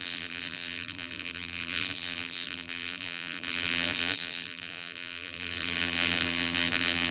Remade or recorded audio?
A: remade